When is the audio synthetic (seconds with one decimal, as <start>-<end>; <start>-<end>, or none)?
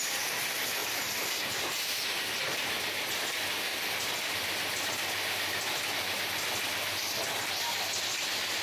0.8-1.9; 3.7-7.5